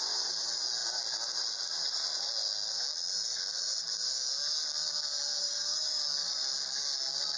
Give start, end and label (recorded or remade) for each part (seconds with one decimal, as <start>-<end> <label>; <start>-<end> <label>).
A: 0.0-5.4 recorded; 5.4-6.0 remade; 6.0-7.4 recorded